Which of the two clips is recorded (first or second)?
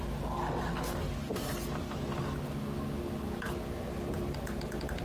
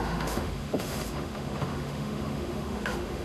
first